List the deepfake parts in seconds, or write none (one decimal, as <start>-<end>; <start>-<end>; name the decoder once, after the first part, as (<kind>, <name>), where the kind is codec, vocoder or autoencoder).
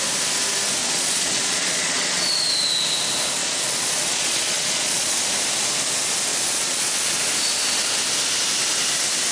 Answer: 0.8-2.3 (vocoder, Vocos); 3.4-5.2; 6.3-7.3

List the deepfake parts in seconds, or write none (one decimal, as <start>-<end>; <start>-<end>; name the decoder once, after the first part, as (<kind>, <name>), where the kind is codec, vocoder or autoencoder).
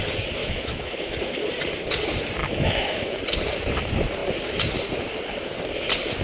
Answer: 0.4-1.2 (autoencoder, DAC-VAE); 2.4-3.2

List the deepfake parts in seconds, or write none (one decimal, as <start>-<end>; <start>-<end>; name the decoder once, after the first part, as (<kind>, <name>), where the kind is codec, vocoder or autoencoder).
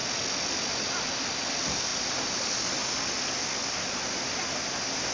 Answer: none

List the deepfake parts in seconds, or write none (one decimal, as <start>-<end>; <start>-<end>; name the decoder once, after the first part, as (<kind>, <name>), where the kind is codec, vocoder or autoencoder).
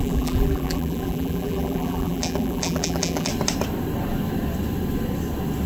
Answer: 0.0-3.3 (vocoder, BigVGAN v2)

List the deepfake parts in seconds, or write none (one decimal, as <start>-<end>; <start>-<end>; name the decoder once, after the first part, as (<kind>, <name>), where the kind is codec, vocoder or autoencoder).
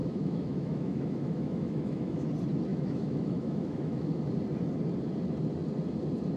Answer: 0.0-2.3 (autoencoder, DAC-VAE); 2.7-4.3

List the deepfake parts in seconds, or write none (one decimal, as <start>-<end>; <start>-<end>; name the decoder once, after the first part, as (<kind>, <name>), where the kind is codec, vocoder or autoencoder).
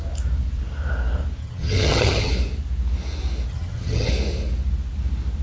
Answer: 1.4-2.3 (vocoder, HiFi-GAN); 3.5-4.1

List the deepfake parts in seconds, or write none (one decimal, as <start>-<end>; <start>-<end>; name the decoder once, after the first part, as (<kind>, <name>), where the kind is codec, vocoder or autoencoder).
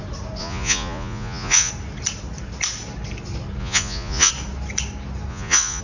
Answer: 0.4-1.7 (vocoder, Vocos); 3.6-4.3; 5.3-5.8